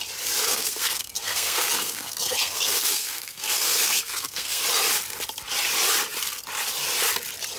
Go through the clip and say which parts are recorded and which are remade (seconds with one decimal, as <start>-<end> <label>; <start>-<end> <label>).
0.0-0.4 recorded; 0.4-4.6 remade; 4.6-7.6 recorded